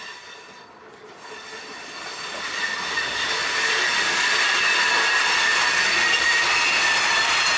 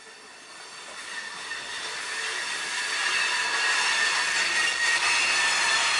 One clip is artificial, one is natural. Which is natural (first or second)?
second